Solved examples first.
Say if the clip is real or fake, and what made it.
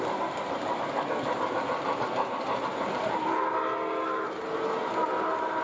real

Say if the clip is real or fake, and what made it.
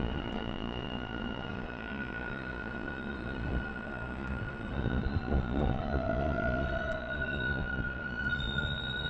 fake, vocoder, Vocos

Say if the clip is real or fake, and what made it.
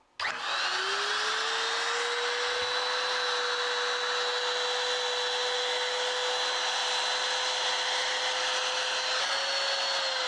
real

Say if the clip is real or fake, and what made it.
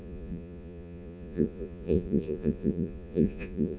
fake, vocoder, Vocos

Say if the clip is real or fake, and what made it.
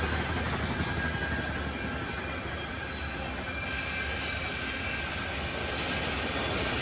real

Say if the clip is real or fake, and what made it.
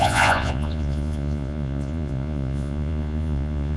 fake, vocoder, Vocos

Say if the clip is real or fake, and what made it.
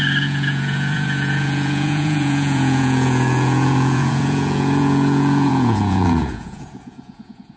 fake, vocoder, Vocos